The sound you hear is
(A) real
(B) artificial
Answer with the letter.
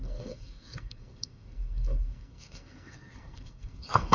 B